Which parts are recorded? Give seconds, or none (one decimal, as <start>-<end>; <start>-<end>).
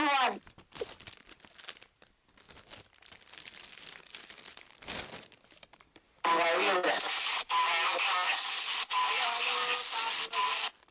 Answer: 0.0-10.9